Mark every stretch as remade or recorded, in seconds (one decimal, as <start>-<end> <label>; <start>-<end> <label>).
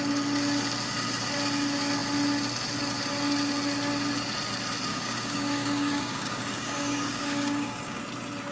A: 0.0-4.9 recorded; 4.9-8.0 remade; 8.0-8.5 recorded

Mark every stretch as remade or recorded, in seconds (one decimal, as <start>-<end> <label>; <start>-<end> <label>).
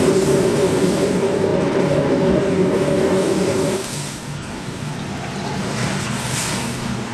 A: 0.0-4.9 remade; 4.9-5.6 recorded; 5.6-7.1 remade